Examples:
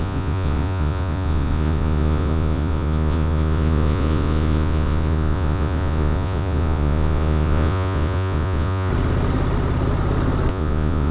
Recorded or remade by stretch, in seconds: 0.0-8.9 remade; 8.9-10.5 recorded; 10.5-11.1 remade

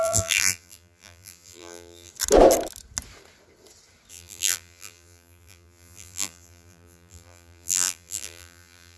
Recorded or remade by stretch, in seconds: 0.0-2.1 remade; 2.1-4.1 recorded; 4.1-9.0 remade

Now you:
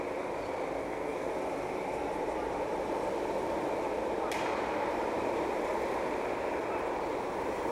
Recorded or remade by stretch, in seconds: 0.0-0.8 recorded; 0.8-1.3 remade; 1.3-7.7 recorded

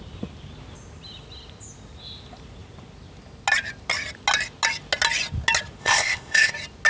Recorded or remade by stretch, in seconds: 0.0-5.8 recorded; 5.8-6.5 remade; 6.5-6.9 recorded

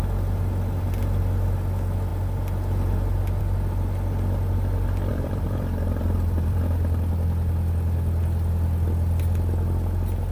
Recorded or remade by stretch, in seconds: 0.0-5.1 recorded; 5.1-6.6 remade; 6.6-10.3 recorded

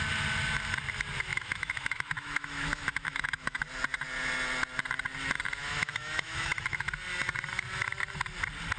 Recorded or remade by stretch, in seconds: 0.0-1.3 recorded; 1.3-3.6 remade; 3.6-5.6 recorded; 5.6-6.9 remade; 6.9-8.8 recorded